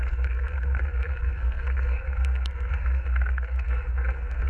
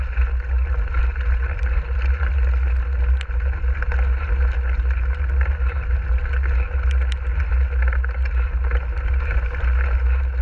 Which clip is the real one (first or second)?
second